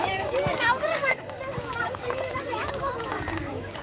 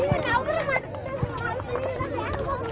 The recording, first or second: second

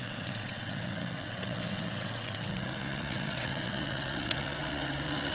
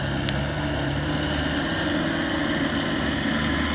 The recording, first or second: second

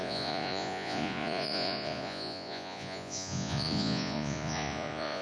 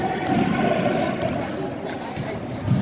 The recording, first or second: second